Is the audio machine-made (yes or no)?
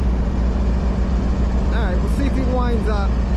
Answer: no